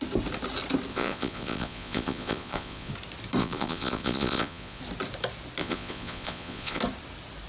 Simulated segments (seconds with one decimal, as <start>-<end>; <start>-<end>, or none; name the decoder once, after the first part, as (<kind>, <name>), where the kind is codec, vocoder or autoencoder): 0.9-2.9 (vocoder, Vocos); 3.4-4.8; 5.6-6.8

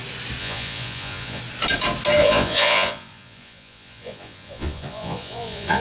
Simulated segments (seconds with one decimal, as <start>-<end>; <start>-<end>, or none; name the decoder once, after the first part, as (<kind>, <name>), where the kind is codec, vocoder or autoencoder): 0.4-1.4 (vocoder, Vocos); 2.2-5.8

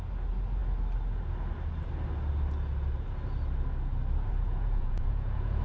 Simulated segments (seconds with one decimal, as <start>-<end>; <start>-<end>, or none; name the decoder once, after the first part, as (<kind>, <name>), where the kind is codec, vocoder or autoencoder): 4.3-5.6 (vocoder, Vocos)

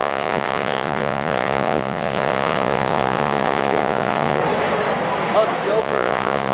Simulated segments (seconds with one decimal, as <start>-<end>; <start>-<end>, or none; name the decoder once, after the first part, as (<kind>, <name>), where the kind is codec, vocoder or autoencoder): 0.0-4.4 (vocoder, Vocos); 5.8-6.5